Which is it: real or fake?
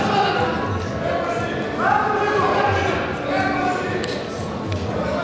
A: real